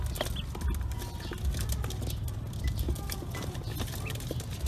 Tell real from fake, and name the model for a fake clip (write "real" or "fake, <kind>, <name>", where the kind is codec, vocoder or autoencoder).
real